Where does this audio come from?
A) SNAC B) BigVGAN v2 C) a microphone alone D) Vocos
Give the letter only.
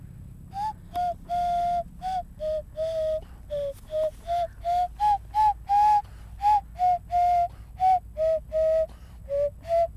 C